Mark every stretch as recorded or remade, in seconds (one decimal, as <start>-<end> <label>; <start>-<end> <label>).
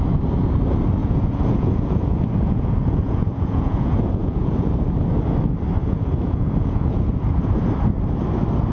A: 0.0-1.0 recorded; 1.0-4.8 remade; 4.8-5.8 recorded; 5.8-7.2 remade; 7.2-8.7 recorded